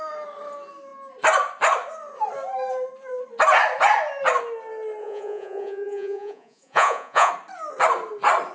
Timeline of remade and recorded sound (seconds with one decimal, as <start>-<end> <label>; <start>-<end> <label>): 0.0-5.0 recorded; 5.0-7.3 remade; 7.3-8.5 recorded